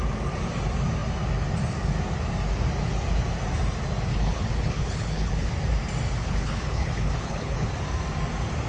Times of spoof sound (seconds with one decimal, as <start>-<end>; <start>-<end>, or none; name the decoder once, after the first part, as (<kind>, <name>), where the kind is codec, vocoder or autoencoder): 4.1-5.5 (codec, HILCodec); 6.2-7.7